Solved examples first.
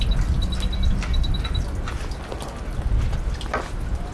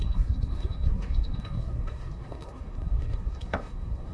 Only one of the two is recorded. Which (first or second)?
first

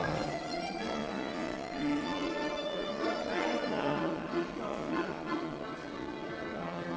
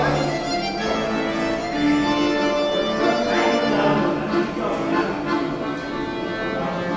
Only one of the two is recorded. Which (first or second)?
second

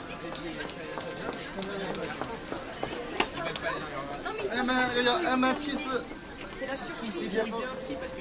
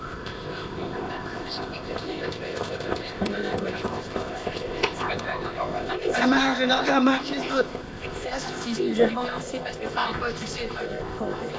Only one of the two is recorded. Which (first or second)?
first